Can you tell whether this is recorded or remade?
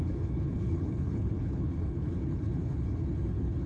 remade